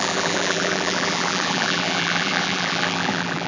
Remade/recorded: remade